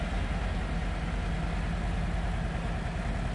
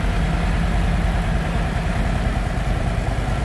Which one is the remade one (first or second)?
second